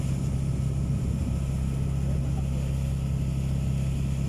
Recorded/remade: recorded